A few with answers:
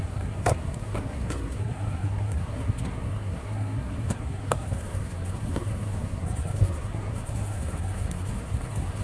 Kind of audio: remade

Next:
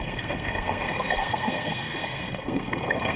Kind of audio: remade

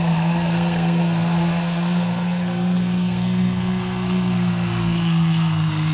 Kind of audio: remade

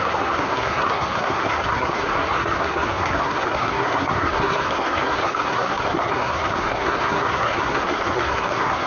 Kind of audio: remade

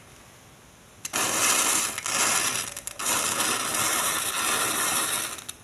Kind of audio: recorded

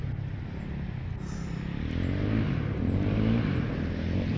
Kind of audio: recorded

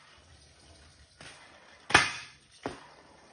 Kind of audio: recorded